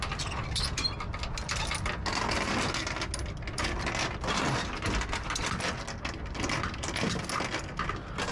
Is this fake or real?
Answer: real